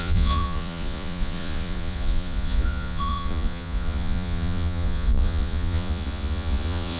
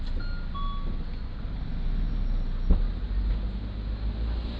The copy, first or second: first